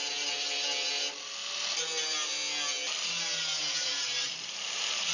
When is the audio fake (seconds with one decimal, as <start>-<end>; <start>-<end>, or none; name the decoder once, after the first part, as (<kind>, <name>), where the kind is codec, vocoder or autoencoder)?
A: 3.8-5.1 (vocoder, BigVGAN v2)